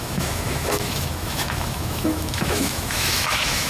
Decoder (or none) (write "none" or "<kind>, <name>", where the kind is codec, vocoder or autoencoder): autoencoder, DAC-VAE